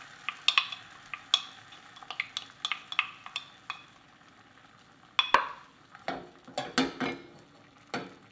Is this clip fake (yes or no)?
no